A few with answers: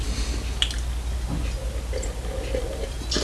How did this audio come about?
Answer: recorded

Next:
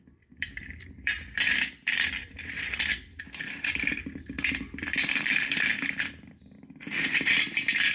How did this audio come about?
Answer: remade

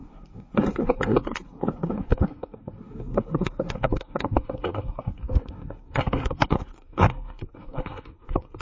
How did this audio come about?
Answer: remade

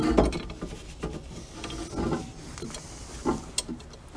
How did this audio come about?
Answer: recorded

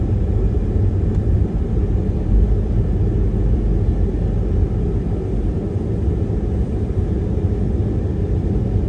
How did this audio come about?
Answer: recorded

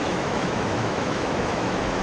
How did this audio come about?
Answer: remade